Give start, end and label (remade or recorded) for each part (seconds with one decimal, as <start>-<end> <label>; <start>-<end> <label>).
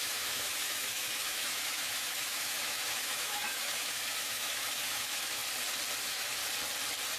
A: 0.0-5.4 remade; 5.4-6.0 recorded; 6.0-6.4 remade; 6.4-7.2 recorded